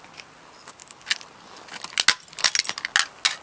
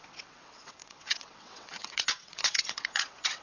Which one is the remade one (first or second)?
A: second